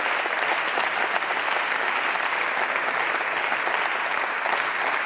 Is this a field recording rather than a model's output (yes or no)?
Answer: yes